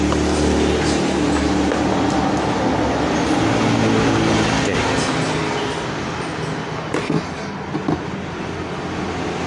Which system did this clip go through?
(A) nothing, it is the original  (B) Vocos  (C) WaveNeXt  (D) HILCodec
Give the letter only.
A